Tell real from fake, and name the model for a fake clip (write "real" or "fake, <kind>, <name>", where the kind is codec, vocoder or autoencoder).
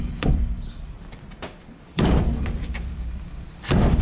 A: fake, vocoder, BigVGAN v2